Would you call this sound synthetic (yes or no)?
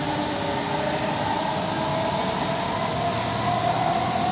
no